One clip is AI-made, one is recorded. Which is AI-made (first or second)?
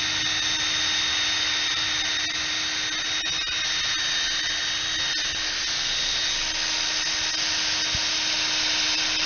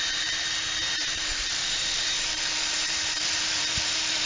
second